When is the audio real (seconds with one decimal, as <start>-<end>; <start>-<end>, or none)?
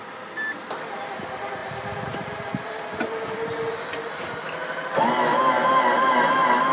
0.0-6.7